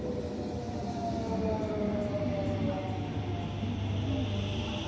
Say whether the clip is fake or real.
real